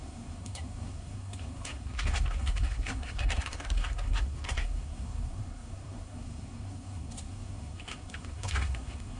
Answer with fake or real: fake